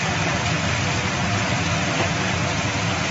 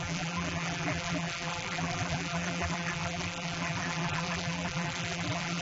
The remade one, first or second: second